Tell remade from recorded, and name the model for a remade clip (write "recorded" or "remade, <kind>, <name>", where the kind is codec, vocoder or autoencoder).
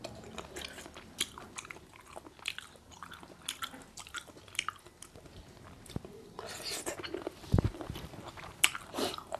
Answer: recorded